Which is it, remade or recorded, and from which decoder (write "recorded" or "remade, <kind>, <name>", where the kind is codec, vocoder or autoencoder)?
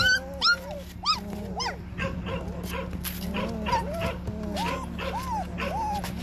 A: recorded